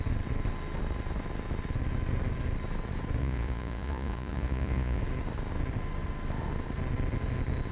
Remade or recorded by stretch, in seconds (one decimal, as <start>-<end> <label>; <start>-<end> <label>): 0.0-3.2 recorded; 3.2-5.0 remade; 5.0-7.7 recorded